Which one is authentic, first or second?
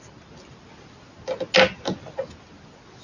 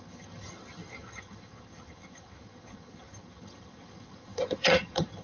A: first